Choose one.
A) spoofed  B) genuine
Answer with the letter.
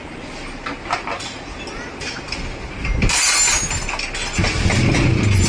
B